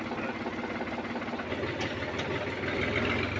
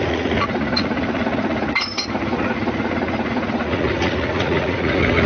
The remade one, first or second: second